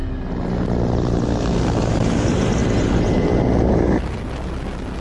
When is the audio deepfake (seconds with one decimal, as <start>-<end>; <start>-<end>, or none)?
none